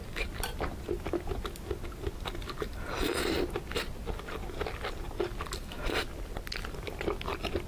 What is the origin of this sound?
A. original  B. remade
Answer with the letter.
A